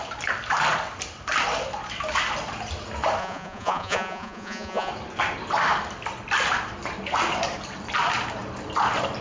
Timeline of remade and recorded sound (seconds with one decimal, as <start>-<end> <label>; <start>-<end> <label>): 0.0-3.2 recorded; 3.2-4.9 remade; 4.9-9.2 recorded